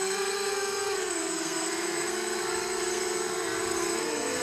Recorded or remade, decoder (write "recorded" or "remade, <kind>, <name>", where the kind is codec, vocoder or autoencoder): remade, codec, SNAC